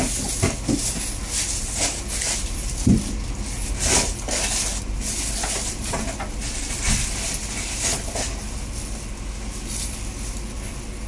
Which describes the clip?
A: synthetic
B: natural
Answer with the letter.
B